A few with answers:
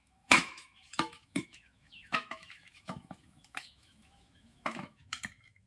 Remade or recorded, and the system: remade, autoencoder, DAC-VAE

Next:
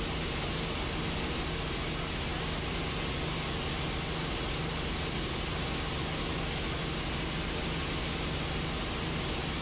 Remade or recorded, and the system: recorded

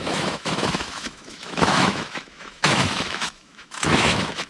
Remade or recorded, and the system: remade, autoencoder, DAC-VAE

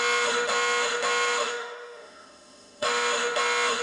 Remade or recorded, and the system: remade, autoencoder, DAC-VAE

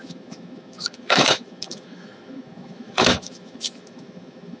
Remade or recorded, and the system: remade, autoencoder, DAC-VAE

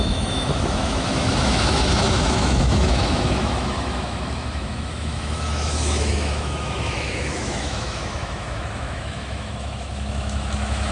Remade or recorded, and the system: remade, autoencoder, DAC-VAE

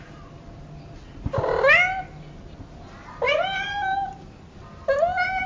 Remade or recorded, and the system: recorded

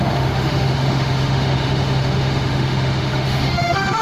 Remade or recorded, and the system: remade, autoencoder, DAC-VAE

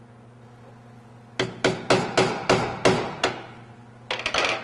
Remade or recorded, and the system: recorded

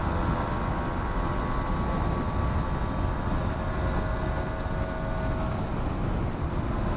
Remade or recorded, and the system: recorded